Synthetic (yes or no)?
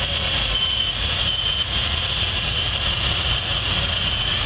yes